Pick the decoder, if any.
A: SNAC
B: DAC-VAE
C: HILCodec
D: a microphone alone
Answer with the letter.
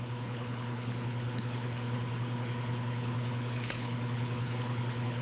C